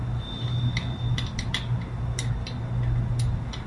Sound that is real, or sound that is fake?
real